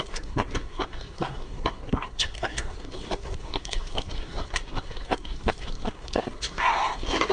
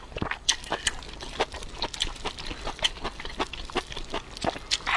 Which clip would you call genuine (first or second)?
second